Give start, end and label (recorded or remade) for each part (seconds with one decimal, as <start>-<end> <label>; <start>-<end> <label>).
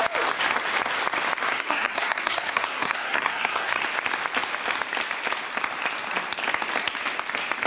0.0-1.4 recorded; 1.4-3.8 remade; 3.8-7.7 recorded